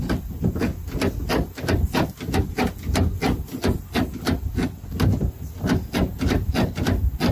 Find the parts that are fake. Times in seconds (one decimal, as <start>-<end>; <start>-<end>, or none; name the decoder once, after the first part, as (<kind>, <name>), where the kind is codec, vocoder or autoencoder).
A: none